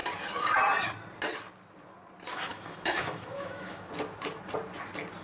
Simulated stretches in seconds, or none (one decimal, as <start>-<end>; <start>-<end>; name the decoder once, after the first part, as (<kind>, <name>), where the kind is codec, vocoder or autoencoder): 2.5-3.9 (autoencoder, DAC-VAE)